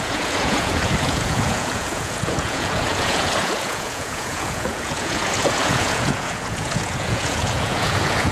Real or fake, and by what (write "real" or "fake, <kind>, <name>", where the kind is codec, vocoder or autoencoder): fake, vocoder, Vocos